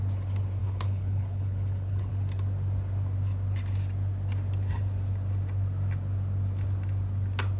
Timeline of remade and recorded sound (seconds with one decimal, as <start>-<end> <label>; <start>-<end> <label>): 0.0-0.6 recorded; 0.6-2.1 remade; 2.1-7.6 recorded